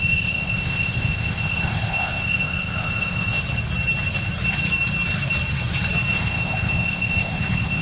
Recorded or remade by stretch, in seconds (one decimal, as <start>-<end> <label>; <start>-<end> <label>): 0.0-3.4 remade; 3.4-6.1 recorded; 6.1-7.8 remade